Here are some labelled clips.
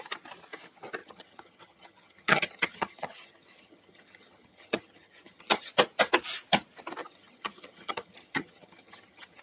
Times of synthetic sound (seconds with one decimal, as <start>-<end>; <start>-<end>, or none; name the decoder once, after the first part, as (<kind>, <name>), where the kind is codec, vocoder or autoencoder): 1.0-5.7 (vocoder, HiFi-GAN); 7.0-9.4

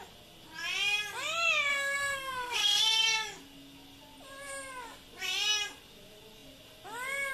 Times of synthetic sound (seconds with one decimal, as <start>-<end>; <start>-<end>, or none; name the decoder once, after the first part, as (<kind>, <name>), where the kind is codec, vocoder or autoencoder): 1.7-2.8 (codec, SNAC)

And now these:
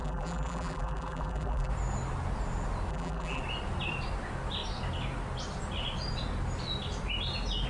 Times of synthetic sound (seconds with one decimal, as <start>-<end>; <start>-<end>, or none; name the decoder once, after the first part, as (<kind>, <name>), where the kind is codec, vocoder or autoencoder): 0.0-1.7 (vocoder, BigVGAN v2); 2.9-3.4